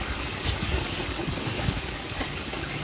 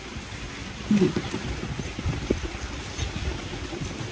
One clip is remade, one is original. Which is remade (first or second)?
first